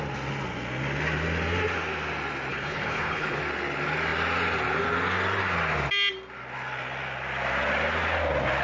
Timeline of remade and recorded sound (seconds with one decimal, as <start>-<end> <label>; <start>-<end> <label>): 0.0-2.5 recorded; 2.5-3.4 remade; 3.4-8.6 recorded